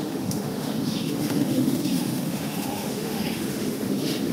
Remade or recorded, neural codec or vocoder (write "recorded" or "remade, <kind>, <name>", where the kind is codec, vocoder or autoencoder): remade, autoencoder, DAC-VAE